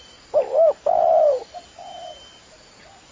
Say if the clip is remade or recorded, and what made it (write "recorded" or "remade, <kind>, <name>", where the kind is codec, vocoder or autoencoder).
remade, vocoder, BigVGAN v2